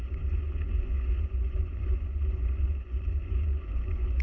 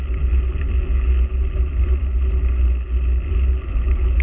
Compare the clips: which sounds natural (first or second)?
second